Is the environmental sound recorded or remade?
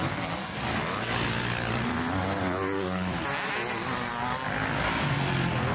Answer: recorded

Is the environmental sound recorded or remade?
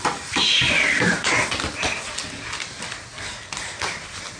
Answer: recorded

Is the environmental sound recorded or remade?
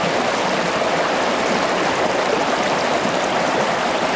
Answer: recorded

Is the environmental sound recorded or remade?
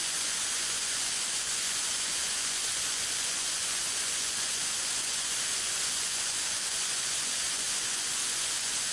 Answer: remade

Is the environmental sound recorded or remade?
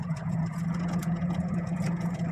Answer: remade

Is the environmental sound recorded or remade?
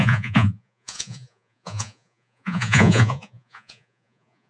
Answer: remade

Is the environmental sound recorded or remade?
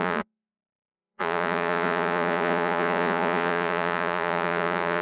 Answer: remade